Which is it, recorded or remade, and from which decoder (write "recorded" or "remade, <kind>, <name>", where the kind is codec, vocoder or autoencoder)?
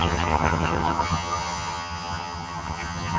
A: remade, vocoder, HiFi-GAN